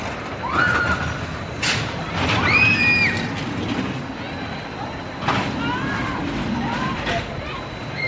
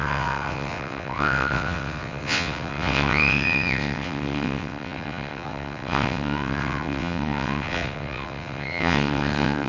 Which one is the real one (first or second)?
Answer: first